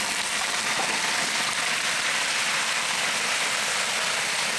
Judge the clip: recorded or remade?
recorded